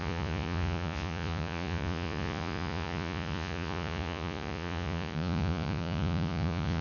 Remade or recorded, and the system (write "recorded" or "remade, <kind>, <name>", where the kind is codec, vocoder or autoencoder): remade, vocoder, Vocos